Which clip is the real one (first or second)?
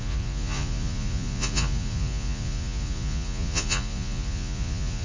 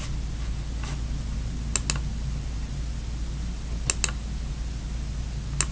second